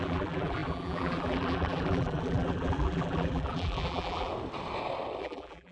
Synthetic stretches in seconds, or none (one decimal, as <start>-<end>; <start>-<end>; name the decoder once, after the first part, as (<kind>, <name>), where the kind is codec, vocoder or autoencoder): 0.0-4.3 (vocoder, BigVGAN v2); 5.2-5.7